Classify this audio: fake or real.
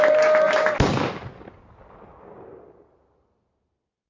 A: real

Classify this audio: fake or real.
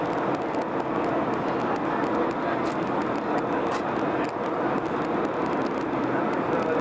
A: real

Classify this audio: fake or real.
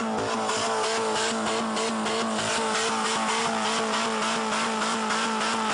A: real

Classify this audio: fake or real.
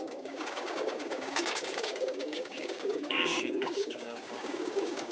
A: fake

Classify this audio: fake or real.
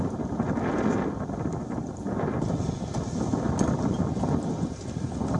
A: real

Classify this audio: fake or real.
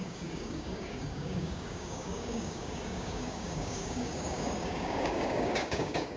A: fake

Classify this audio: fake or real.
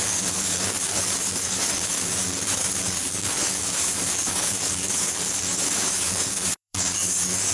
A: fake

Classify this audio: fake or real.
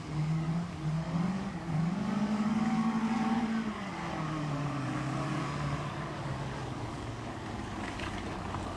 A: fake